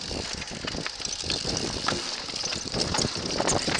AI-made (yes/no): no